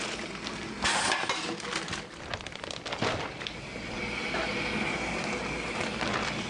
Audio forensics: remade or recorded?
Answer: recorded